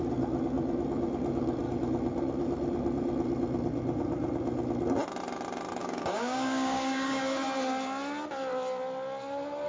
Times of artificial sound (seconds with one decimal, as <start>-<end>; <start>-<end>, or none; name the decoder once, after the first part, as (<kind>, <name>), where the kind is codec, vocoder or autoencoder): 5.8-7.2 (codec, DAC)